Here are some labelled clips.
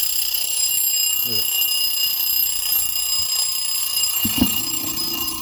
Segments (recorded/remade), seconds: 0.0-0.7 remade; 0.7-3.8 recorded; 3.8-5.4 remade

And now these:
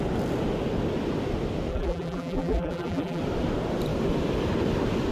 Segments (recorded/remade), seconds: 0.0-1.7 recorded; 1.7-3.2 remade; 3.2-5.1 recorded

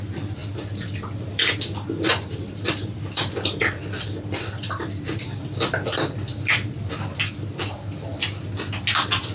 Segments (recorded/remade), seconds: 0.0-0.4 recorded; 0.4-5.2 remade; 5.2-9.3 recorded